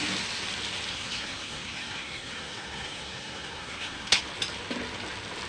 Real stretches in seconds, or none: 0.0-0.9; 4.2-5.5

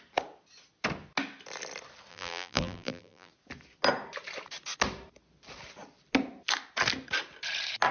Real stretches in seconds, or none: 0.0-2.1; 3.3-7.9

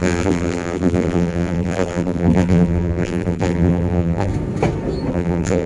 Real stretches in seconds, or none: 4.3-5.1

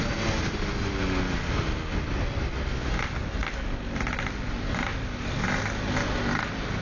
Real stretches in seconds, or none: 0.7-4.5; 4.9-6.8

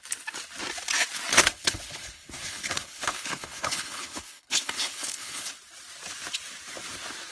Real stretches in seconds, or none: 0.0-1.3; 5.5-7.3

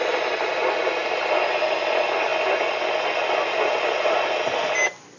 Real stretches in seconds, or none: 0.0-5.2

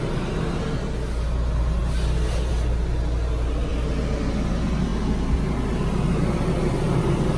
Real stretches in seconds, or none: 0.0-7.4